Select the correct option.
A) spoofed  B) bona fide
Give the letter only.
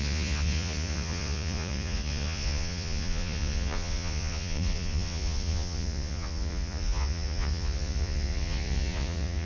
A